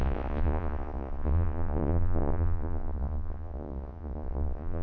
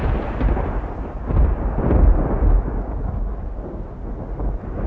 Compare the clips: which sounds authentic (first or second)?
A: second